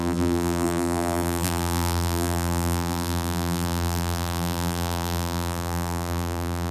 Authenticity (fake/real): fake